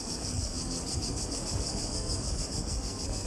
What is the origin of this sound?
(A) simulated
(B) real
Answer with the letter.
A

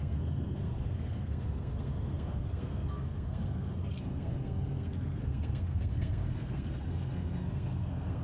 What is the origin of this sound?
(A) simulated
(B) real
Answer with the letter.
A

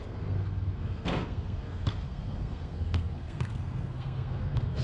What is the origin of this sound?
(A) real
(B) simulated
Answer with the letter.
B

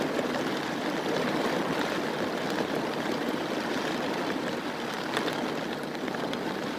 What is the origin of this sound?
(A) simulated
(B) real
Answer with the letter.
B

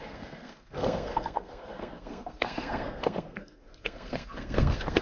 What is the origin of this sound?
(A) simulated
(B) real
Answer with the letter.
A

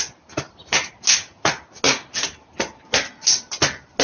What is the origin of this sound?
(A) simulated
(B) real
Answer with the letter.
B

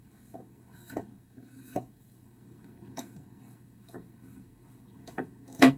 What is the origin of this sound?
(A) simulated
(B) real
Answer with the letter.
A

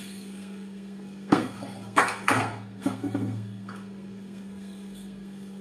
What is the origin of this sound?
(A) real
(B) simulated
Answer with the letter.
B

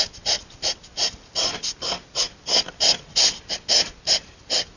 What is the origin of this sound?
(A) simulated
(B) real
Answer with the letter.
B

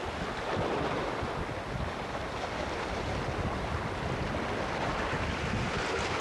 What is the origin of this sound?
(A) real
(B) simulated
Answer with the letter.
A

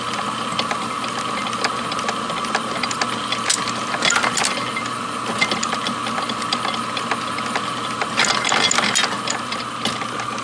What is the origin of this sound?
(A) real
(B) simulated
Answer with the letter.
A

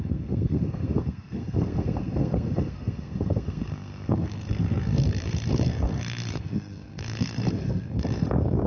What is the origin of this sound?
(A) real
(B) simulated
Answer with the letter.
B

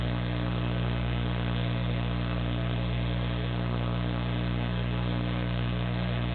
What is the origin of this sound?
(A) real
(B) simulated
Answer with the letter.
B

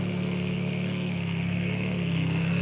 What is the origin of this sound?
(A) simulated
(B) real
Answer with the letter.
A